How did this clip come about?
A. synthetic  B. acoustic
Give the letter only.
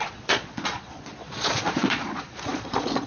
A